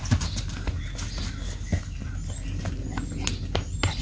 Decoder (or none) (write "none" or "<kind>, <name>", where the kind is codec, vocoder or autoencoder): none